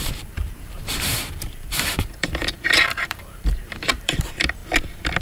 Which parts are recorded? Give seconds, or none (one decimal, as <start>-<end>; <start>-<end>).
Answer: 4.6-5.2